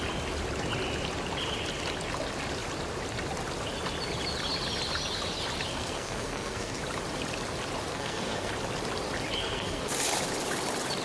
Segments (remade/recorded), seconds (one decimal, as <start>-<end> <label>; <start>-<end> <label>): 0.0-5.7 recorded; 5.7-6.8 remade; 6.8-7.9 recorded; 7.9-8.5 remade; 8.5-9.4 recorded; 9.4-9.9 remade; 9.9-11.0 recorded